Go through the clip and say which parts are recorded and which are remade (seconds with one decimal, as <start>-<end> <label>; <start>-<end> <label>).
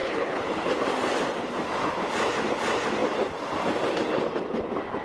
0.0-0.7 remade; 0.7-5.0 recorded